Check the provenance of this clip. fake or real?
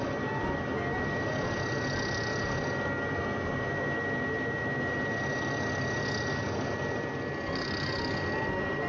real